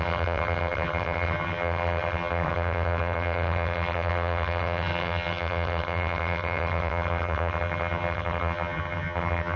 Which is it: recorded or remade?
remade